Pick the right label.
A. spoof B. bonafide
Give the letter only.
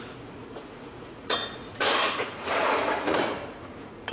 A